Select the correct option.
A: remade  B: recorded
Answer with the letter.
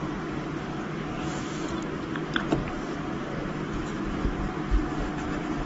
B